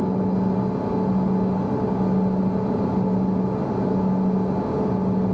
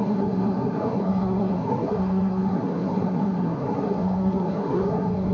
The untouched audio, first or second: first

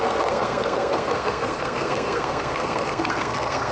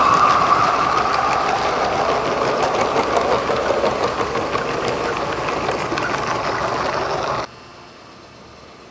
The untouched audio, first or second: second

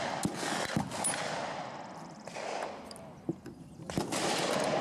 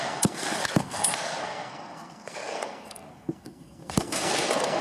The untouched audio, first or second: first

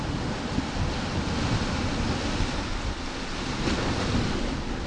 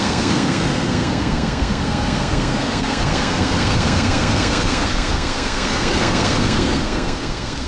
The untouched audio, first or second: first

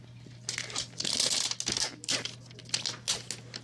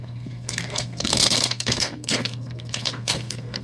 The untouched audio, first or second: first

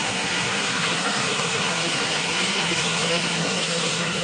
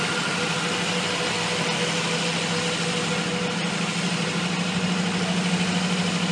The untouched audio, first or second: second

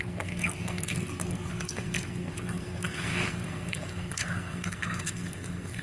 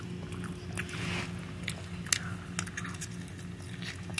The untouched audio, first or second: second